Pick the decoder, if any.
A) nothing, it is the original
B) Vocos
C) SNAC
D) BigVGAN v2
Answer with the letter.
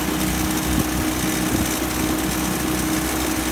A